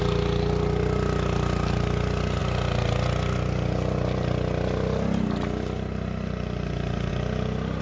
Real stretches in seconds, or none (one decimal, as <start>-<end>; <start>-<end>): 0.0-7.8